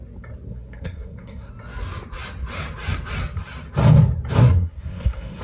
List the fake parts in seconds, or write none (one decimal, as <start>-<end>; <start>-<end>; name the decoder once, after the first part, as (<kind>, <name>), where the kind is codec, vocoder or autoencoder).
0.5-1.5 (codec, SNAC); 4.4-5.4